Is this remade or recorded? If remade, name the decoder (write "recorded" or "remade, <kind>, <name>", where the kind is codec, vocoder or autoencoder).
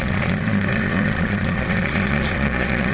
remade, vocoder, Vocos